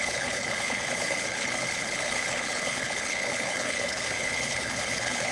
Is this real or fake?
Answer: fake